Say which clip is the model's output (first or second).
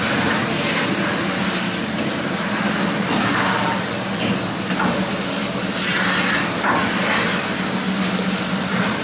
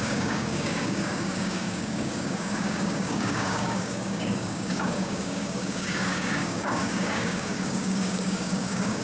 second